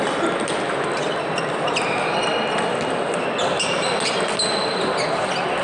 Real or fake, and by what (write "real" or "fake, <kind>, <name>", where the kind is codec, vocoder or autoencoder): real